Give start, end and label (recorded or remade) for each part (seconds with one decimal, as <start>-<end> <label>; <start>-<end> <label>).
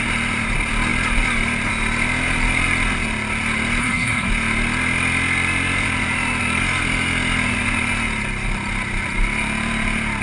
0.0-3.8 recorded; 3.8-4.3 remade; 4.3-10.2 recorded